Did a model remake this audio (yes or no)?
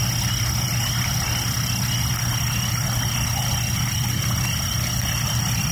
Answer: no